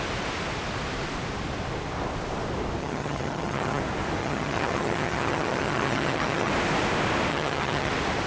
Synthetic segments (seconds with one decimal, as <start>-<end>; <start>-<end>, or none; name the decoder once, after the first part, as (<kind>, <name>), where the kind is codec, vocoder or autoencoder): 2.8-3.8 (vocoder, HiFi-GAN); 4.2-6.5; 7.3-7.9